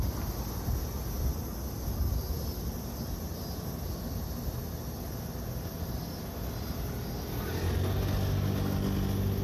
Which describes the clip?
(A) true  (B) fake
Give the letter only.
A